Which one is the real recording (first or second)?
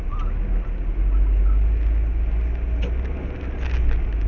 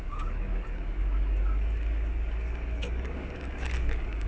first